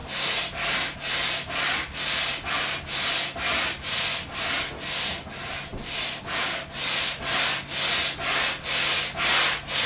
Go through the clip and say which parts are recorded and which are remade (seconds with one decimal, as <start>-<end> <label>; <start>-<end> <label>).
0.0-9.9 recorded